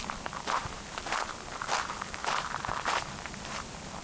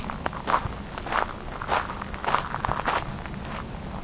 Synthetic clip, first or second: first